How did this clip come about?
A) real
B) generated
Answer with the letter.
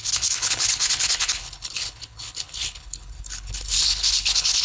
B